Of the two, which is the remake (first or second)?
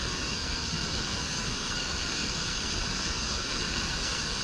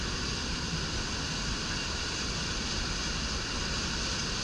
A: first